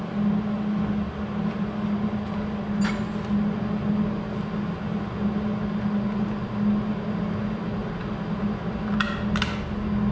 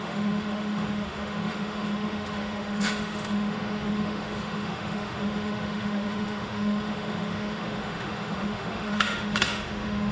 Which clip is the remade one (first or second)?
second